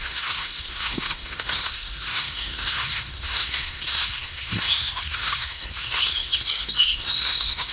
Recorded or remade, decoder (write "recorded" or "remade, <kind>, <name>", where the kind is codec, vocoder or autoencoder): remade, codec, SNAC